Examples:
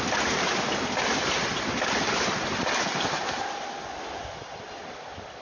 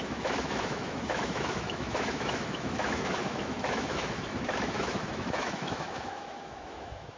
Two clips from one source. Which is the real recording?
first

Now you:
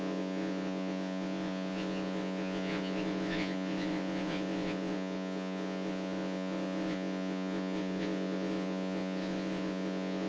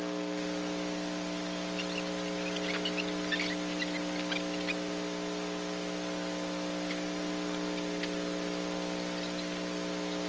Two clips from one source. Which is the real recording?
second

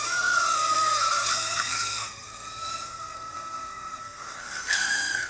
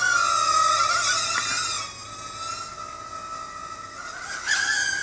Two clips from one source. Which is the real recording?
second